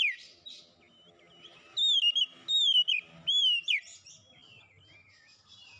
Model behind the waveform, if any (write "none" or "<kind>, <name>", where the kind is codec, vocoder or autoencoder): none